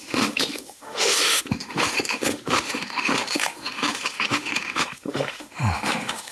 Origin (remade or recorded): remade